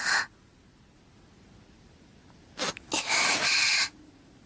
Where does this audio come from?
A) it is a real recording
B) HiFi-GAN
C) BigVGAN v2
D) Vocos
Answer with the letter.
A